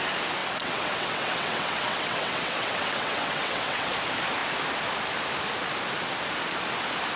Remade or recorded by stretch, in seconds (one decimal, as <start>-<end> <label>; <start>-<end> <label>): 0.0-0.4 recorded; 0.4-3.9 remade; 3.9-7.2 recorded